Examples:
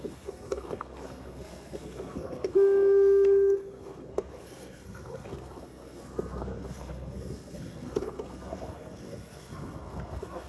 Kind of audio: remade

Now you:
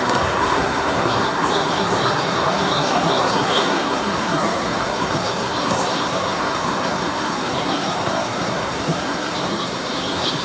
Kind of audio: remade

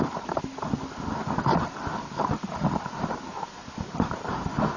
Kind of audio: recorded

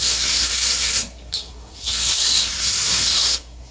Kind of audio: remade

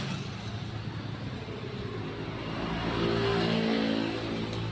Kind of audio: recorded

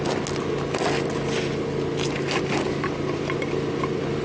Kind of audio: recorded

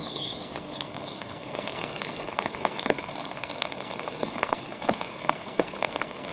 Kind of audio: remade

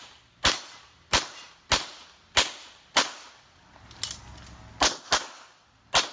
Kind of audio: recorded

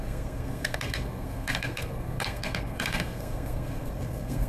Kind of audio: remade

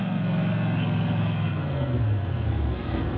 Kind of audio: remade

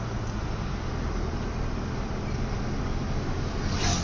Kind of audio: recorded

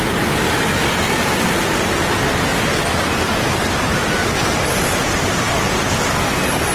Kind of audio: recorded